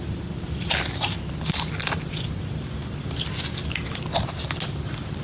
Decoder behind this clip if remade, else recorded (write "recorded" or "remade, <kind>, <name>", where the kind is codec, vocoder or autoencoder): recorded